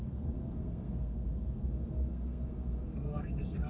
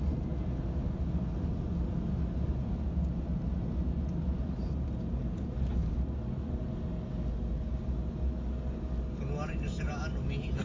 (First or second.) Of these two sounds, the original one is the second